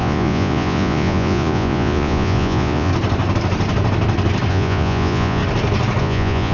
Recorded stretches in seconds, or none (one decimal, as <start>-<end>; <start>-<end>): 2.9-4.5; 5.4-6.0